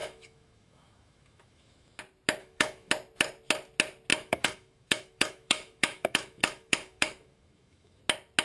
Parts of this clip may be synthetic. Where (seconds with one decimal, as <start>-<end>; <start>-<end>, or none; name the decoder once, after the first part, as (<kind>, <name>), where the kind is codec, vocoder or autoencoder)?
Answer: 0.0-2.0 (autoencoder, DAC-VAE); 2.4-2.9; 4.1-8.0